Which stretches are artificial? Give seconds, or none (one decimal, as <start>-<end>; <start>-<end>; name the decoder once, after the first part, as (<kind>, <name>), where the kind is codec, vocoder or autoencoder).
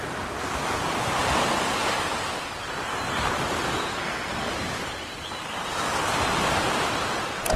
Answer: 3.9-4.5 (codec, SNAC)